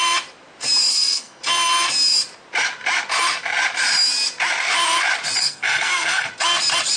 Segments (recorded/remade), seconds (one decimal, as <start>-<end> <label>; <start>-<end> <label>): 0.0-0.9 recorded; 0.9-1.4 remade; 1.4-5.4 recorded; 5.4-6.3 remade; 6.3-7.0 recorded